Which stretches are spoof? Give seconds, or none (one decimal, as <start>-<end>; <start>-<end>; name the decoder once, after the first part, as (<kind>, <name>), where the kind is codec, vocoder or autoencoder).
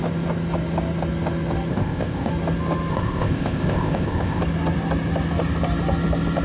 1.7-2.3 (codec, ZipCodec); 2.9-4.4